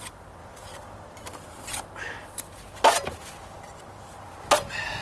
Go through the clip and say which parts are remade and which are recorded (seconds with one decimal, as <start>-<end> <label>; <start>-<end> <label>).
0.0-5.0 recorded